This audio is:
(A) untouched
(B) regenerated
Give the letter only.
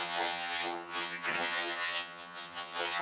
B